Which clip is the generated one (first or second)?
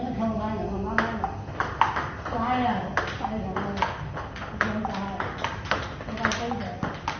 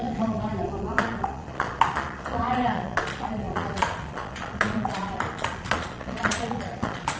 second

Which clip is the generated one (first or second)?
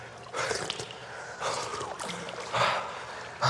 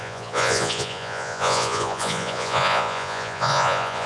second